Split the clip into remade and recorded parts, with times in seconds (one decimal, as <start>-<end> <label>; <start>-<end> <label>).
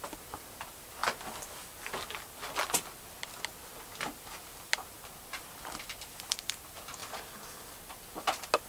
0.0-1.0 remade; 1.0-5.4 recorded; 5.4-7.0 remade; 7.0-8.7 recorded